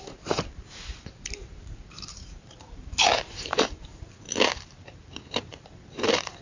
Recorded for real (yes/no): no